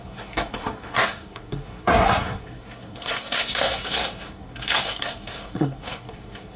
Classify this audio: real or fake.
fake